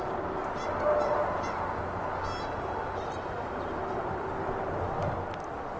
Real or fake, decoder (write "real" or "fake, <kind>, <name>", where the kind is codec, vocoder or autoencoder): real